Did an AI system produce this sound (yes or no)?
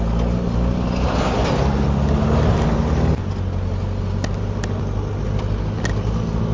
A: no